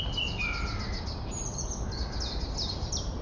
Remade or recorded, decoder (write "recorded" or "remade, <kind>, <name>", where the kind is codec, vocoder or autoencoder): recorded